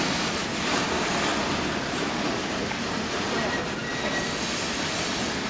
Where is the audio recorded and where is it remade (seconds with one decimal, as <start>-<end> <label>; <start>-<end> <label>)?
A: 0.0-5.5 recorded